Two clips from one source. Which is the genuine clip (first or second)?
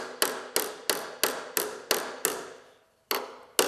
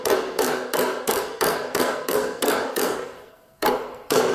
first